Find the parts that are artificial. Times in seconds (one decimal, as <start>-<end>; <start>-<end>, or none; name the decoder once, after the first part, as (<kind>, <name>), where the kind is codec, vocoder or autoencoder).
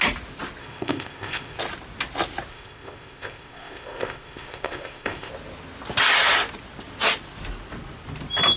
0.6-1.6 (codec, ZipCodec); 2.5-5.3